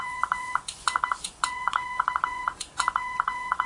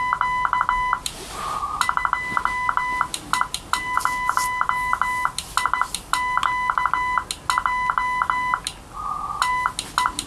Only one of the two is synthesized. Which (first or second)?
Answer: first